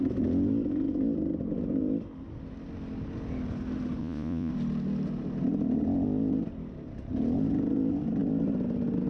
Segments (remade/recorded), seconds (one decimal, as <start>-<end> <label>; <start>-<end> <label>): 0.0-4.0 recorded; 4.0-4.5 remade; 4.5-9.1 recorded